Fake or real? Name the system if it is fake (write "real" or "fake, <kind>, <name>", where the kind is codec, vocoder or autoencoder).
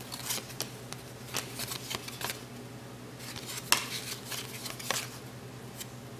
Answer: real